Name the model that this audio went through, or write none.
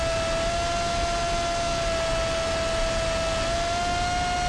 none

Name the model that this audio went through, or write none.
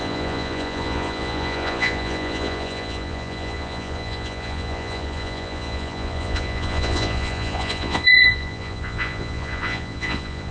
vocoder, Vocos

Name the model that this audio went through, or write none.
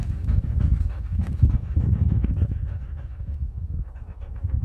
codec, DAC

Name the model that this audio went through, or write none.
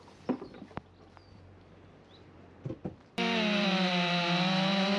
vocoder, BigVGAN v2